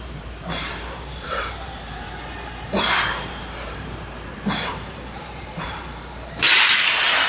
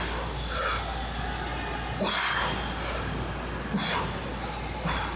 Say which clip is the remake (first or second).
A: first